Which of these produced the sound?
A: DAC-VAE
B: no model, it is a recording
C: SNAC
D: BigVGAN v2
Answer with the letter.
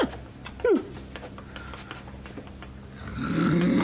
B